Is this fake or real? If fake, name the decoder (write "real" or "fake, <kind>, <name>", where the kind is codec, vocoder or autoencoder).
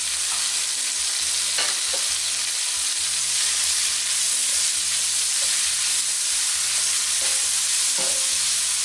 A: real